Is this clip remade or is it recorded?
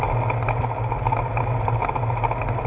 recorded